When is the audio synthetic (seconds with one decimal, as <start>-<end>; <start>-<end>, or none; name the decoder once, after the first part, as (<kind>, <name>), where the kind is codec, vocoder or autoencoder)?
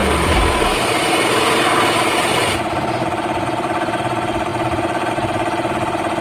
none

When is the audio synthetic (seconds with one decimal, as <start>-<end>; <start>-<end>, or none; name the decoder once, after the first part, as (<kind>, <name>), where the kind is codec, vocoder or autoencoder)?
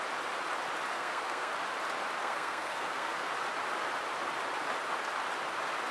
0.9-1.5 (codec, SNAC); 2.2-3.1